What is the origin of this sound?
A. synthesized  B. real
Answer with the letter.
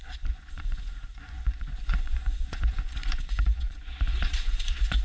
A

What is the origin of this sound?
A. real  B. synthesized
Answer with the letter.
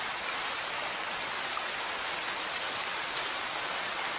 A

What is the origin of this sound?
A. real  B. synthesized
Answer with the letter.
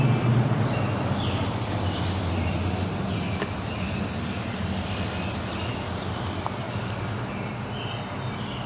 A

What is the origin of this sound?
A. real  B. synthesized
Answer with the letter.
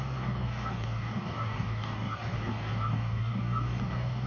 B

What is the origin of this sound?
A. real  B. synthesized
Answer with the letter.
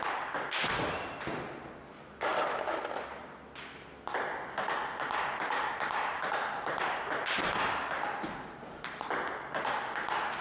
A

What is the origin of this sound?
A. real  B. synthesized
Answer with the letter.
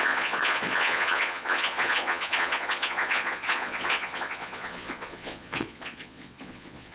B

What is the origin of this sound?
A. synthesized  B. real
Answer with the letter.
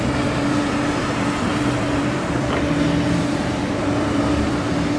A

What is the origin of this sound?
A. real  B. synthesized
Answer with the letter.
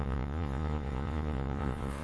B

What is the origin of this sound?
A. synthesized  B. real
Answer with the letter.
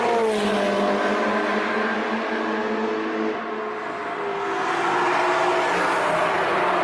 B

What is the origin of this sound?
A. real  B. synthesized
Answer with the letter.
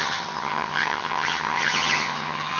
B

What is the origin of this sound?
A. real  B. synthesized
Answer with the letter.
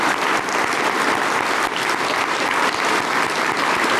A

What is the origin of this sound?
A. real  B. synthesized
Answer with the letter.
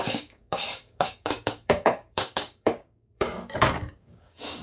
B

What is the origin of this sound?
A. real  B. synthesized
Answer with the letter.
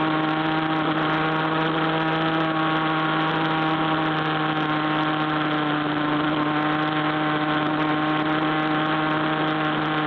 A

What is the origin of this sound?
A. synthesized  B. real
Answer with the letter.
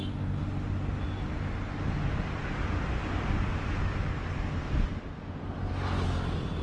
B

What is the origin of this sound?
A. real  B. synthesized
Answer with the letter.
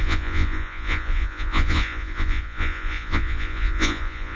B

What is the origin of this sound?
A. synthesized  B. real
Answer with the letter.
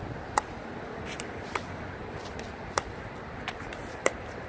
B